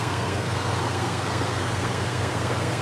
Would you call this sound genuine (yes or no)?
no